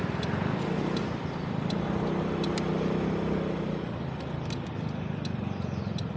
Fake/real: real